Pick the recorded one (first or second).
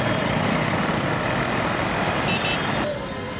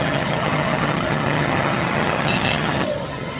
first